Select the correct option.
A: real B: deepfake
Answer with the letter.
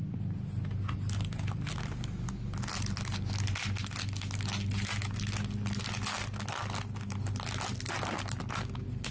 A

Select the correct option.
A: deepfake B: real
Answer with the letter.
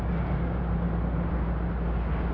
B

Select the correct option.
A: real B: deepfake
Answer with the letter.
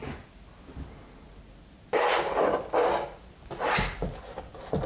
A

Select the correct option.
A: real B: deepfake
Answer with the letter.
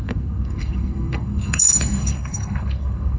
B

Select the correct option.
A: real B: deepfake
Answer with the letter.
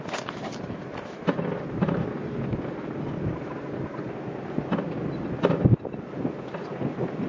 A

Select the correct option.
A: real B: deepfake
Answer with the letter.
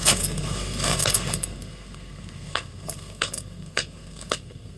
B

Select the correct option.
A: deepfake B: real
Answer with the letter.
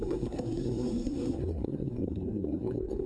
A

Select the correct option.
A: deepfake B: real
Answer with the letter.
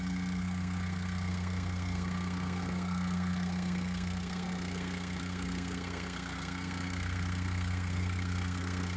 A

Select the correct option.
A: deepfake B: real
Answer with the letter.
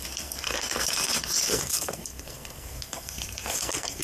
A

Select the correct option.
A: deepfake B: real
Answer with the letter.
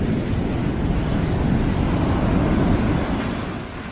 B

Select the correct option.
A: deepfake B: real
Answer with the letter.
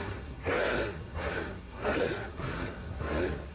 A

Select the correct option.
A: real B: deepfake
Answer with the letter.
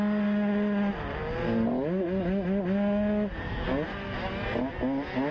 A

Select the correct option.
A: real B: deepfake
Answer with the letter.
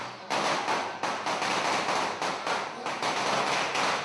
A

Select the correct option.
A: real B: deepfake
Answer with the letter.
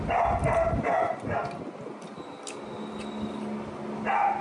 A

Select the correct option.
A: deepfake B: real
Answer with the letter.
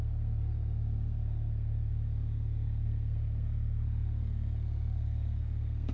A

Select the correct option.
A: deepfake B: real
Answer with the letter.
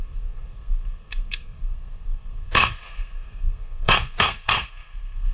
A